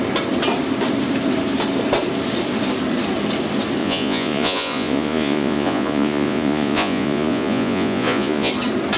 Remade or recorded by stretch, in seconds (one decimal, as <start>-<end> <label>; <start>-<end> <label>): 0.0-3.8 recorded; 3.8-8.5 remade; 8.5-9.0 recorded